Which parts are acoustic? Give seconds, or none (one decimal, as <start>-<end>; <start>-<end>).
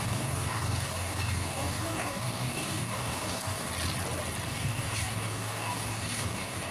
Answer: 3.7-4.5